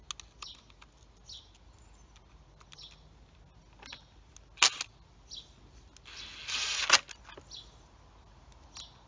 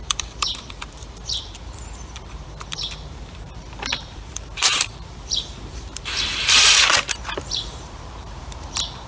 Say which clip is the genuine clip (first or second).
first